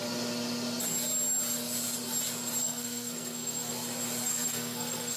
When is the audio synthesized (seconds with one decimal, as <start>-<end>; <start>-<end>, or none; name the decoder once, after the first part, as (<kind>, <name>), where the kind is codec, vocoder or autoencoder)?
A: 2.6-3.7 (codec, SNAC); 4.3-5.2